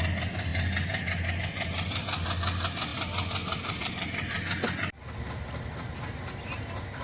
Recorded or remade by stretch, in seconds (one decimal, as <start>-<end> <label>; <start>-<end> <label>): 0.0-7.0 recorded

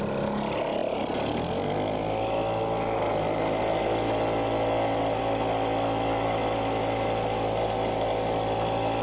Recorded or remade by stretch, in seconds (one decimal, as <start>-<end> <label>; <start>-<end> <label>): 0.0-9.0 recorded

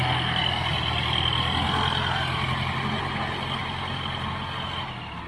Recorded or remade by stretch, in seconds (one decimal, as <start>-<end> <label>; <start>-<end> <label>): 0.0-5.3 recorded

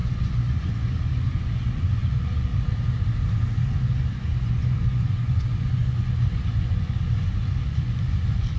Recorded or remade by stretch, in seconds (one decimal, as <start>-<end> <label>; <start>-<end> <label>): 0.0-2.5 remade; 2.5-4.0 recorded; 4.0-8.6 remade

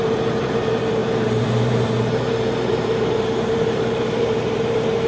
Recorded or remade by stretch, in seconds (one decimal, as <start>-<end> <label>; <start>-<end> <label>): 0.0-5.1 remade